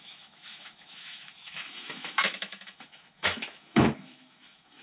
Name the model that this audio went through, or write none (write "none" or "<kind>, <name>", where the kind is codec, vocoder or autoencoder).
autoencoder, DAC-VAE